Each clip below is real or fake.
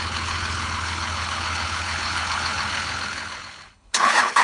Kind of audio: fake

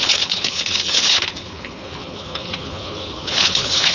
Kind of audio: fake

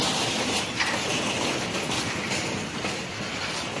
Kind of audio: real